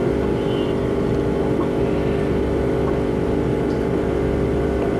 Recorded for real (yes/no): yes